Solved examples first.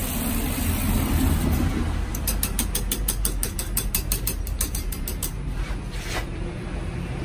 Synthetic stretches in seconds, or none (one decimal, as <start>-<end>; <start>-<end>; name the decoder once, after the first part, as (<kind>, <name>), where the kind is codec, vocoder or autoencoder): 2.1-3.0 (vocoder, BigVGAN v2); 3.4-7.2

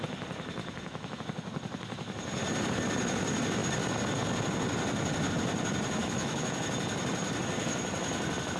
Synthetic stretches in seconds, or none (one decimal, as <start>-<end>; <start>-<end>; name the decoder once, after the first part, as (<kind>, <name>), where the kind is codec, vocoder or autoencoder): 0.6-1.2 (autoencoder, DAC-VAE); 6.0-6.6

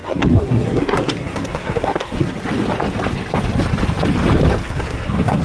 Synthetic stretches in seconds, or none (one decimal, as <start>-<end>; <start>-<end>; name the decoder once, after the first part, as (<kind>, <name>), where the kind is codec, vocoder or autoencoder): 0.0-2.3 (codec, SNAC); 4.6-5.4